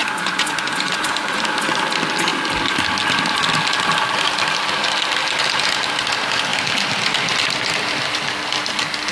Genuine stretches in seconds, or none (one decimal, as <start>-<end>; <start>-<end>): 1.4-9.1